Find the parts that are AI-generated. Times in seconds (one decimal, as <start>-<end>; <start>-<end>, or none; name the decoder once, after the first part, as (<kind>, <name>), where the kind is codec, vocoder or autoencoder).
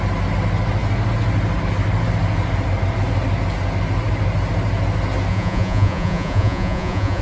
5.3-7.2 (vocoder, Vocos)